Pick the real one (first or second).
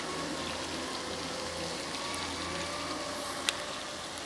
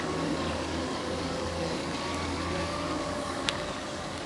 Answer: first